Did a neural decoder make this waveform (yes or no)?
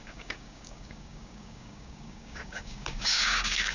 yes